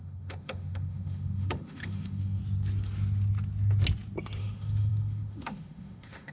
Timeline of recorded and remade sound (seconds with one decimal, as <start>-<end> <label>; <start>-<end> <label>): 0.0-2.4 remade; 2.4-4.4 recorded; 4.4-6.3 remade